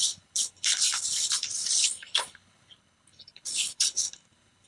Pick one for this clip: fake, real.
fake